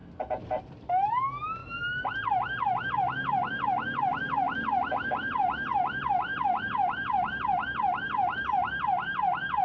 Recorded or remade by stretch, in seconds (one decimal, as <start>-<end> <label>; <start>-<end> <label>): 0.0-9.6 recorded